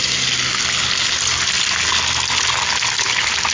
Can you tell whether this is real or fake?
real